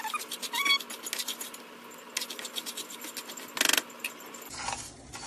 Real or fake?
real